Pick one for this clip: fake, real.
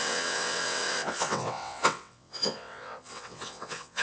fake